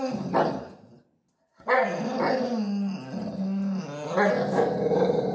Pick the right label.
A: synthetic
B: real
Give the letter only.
B